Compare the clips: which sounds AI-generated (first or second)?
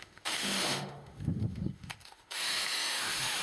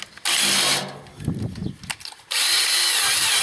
first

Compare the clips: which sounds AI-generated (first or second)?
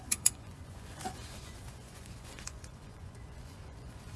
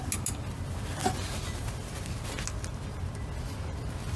first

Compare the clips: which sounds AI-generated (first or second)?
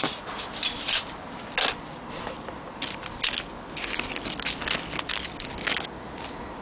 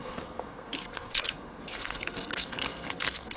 second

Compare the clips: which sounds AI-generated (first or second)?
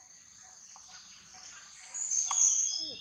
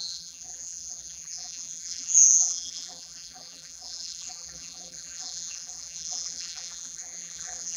second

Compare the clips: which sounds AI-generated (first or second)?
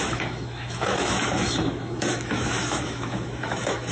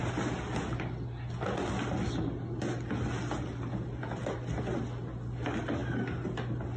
first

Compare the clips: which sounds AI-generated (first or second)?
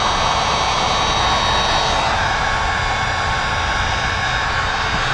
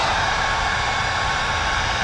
second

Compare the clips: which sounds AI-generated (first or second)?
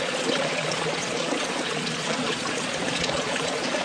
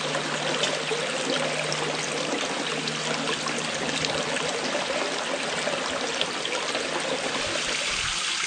first